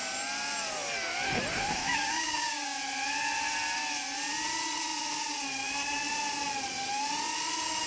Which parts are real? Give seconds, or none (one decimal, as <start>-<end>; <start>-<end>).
0.0-1.8; 2.8-7.9